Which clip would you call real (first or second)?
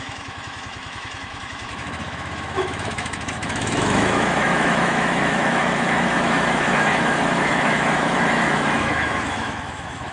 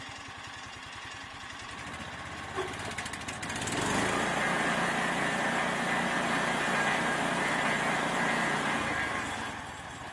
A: second